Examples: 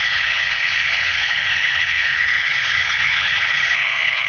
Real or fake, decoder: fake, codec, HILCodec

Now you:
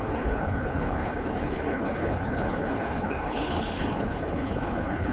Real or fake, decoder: fake, codec, HILCodec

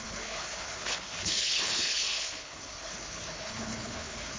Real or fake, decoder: fake, codec, HILCodec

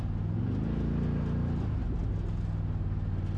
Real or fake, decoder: real